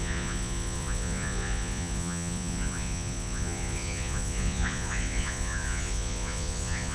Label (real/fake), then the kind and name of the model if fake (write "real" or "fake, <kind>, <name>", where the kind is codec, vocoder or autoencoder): fake, vocoder, Vocos